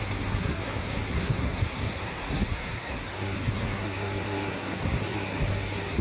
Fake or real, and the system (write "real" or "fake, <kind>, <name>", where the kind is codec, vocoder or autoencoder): fake, codec, SNAC